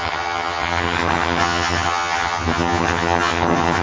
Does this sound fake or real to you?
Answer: fake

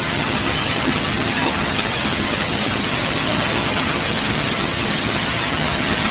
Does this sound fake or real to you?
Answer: fake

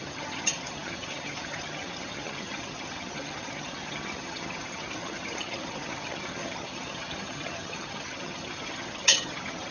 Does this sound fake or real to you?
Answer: fake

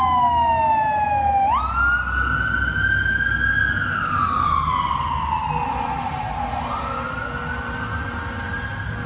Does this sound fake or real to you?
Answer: real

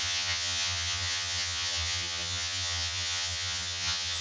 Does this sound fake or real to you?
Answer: fake